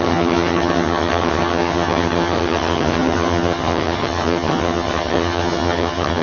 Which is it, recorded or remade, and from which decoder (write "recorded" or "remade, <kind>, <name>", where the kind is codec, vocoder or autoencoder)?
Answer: remade, vocoder, HiFi-GAN